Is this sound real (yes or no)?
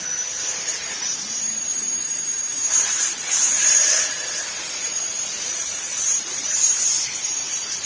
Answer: no